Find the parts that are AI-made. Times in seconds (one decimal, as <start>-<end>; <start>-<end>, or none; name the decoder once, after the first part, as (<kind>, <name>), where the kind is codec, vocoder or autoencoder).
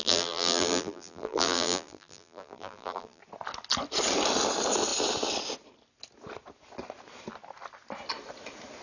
0.0-3.2 (vocoder, BigVGAN v2)